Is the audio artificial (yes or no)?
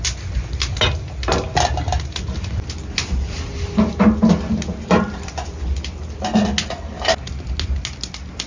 no